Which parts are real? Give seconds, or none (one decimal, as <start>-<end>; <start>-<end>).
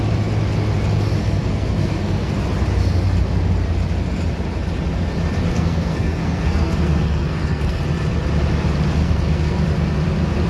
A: 0.0-1.2; 2.3-5.5; 7.8-9.0; 9.6-10.5